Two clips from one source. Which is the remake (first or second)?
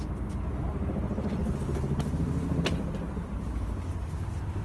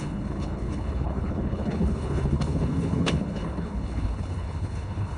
second